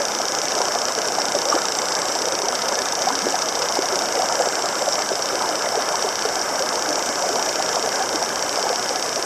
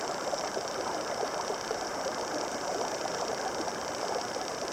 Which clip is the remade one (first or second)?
second